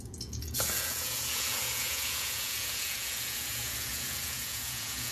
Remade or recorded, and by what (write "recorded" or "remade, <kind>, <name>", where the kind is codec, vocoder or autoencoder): remade, vocoder, Vocos